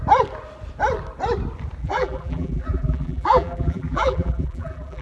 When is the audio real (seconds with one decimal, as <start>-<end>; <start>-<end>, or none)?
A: 0.0-1.8